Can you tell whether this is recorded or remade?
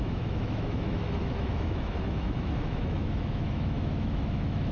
remade